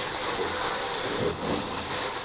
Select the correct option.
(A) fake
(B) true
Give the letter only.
B